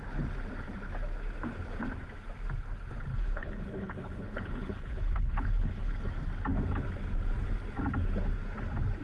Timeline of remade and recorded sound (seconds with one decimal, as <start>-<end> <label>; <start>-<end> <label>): 0.0-3.1 recorded; 3.1-6.1 remade; 6.1-9.0 recorded

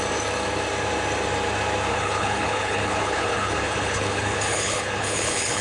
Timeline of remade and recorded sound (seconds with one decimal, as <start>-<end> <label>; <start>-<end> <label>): 0.0-1.9 recorded; 1.9-5.6 remade

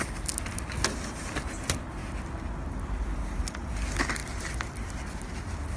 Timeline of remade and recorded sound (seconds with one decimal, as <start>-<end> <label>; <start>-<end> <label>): 0.0-5.8 recorded

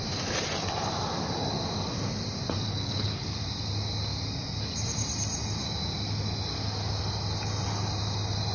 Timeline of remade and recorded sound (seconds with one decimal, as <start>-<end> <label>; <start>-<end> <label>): 0.0-2.7 recorded; 2.7-3.4 remade; 3.4-8.5 recorded

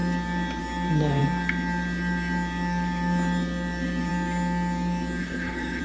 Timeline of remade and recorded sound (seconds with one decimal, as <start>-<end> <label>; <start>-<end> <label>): 0.0-5.2 recorded; 5.2-5.8 remade

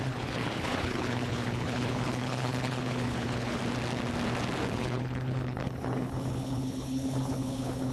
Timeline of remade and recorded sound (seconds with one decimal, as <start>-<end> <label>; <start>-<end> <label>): 0.0-3.6 remade; 3.6-4.7 recorded; 4.7-7.9 remade

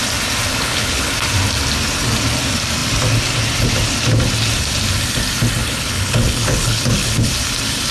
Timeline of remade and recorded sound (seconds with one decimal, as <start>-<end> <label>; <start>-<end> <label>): 0.0-0.5 recorded; 0.5-1.1 remade; 1.1-5.6 recorded; 5.6-7.3 remade; 7.3-7.9 recorded